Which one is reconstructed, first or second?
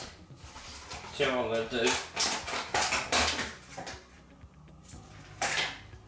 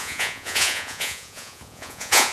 second